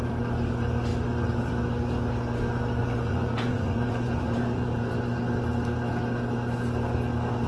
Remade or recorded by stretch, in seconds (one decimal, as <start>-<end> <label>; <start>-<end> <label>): 0.0-2.8 recorded; 2.8-4.9 remade; 4.9-7.5 recorded